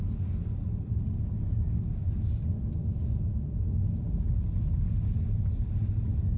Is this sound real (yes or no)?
yes